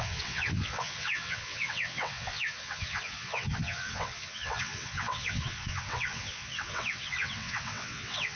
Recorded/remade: remade